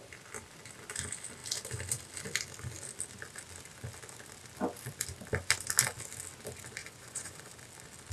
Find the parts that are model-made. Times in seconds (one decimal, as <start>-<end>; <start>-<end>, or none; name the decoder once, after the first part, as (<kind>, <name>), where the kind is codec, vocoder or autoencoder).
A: 6.8-7.5 (vocoder, Vocos)